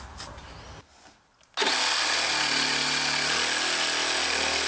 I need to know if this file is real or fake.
real